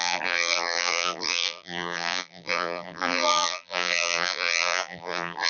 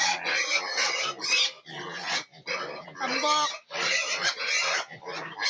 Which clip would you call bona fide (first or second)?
second